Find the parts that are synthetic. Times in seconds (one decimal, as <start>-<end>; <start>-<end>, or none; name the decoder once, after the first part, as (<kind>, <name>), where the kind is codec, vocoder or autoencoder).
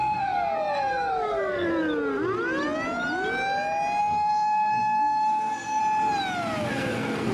0.0-1.7 (codec, SNAC); 4.0-5.8; 6.7-7.3